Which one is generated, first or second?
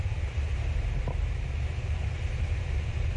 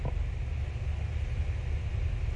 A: first